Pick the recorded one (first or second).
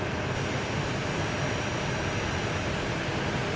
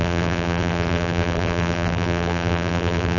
first